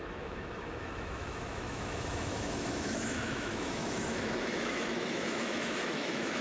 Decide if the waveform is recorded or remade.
remade